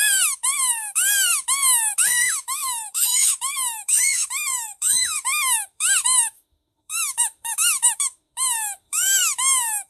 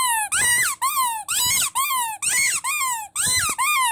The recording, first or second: second